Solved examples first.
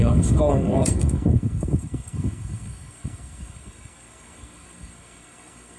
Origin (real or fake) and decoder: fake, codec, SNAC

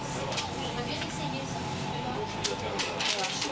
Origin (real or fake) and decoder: real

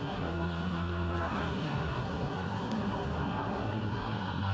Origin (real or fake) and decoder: fake, codec, SNAC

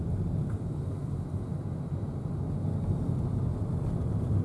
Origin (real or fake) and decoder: real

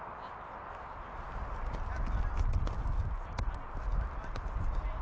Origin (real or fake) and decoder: real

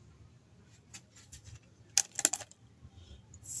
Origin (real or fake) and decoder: real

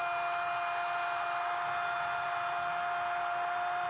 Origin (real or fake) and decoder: real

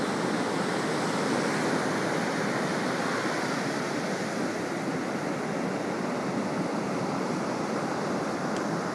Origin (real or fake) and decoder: real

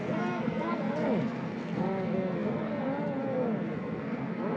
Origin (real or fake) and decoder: fake, codec, SNAC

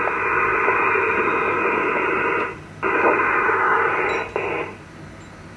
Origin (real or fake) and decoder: real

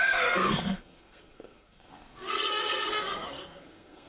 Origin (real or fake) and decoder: fake, codec, SNAC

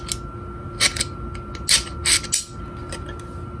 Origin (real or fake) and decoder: real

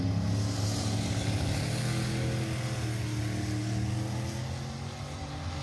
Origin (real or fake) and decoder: real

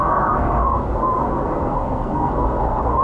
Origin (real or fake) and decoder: fake, codec, SNAC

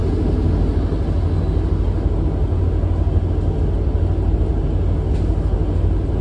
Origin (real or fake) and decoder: real